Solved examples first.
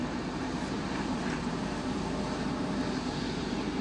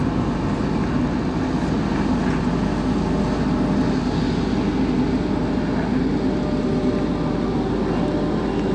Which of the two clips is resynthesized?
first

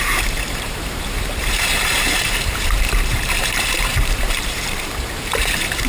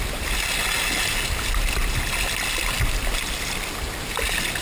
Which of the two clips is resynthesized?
first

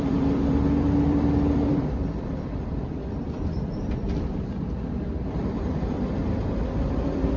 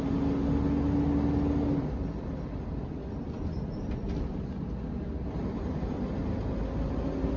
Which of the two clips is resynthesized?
first